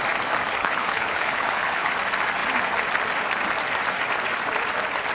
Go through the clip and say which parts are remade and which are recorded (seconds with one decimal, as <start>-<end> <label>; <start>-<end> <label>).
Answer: 0.0-0.6 recorded; 0.6-1.9 remade; 1.9-5.1 recorded

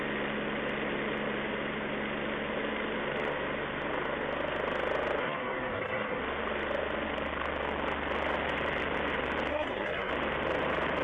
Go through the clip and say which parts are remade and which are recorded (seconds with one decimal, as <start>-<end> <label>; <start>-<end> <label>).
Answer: 0.0-5.2 recorded; 5.2-6.2 remade; 6.2-9.5 recorded; 9.5-10.1 remade; 10.1-11.0 recorded

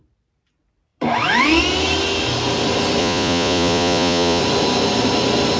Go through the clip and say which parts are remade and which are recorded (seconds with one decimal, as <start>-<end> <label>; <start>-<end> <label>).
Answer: 0.0-3.0 recorded; 3.0-4.4 remade; 4.4-5.6 recorded